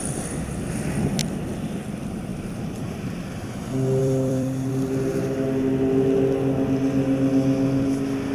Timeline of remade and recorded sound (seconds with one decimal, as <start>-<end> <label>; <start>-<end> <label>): 0.0-1.2 recorded; 1.2-1.8 remade; 1.8-4.0 recorded; 4.0-4.7 remade; 4.7-8.3 recorded